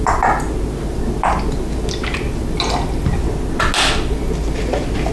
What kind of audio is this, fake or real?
real